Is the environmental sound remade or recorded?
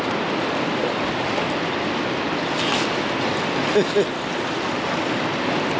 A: recorded